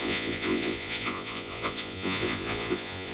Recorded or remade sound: remade